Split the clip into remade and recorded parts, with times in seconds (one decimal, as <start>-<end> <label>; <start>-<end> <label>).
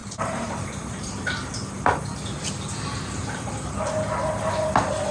0.0-1.5 remade; 1.5-2.9 recorded; 2.9-3.5 remade; 3.5-5.1 recorded